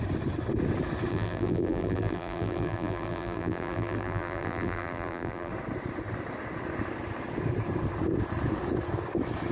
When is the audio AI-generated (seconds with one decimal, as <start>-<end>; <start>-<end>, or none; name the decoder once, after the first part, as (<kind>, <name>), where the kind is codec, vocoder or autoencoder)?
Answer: 1.1-5.5 (vocoder, BigVGAN v2)